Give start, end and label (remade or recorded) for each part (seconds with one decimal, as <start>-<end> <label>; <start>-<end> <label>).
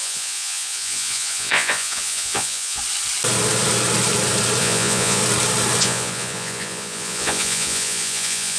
0.0-2.8 remade; 2.8-4.6 recorded; 4.6-5.2 remade; 5.2-5.8 recorded; 5.8-8.6 remade